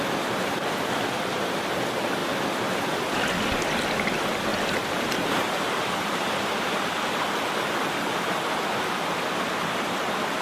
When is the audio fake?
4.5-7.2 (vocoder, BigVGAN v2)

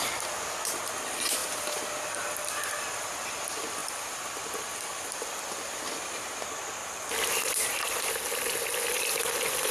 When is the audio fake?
1.4-3.4 (vocoder, BigVGAN v2); 3.8-4.4; 6.8-8.2; 8.7-9.7

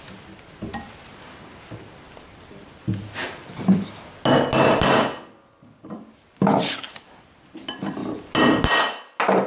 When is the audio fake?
6.5-7.3 (vocoder, BigVGAN v2)

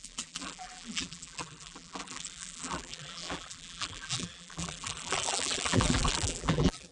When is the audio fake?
0.0-6.9 (vocoder, BigVGAN v2)